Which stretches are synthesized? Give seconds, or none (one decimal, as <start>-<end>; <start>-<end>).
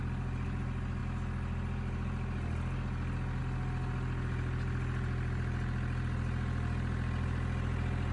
none